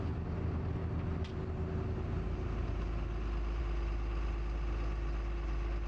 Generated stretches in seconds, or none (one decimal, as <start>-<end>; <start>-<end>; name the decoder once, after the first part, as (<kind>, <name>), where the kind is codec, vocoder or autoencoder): none